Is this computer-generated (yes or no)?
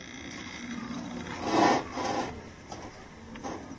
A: no